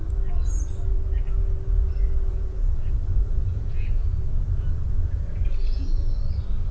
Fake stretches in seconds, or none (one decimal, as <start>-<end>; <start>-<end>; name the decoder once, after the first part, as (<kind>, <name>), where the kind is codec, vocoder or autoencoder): 2.3-6.2 (vocoder, Vocos)